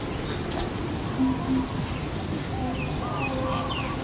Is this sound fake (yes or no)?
no